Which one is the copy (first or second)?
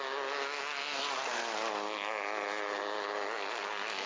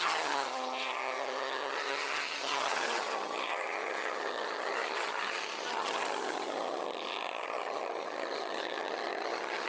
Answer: second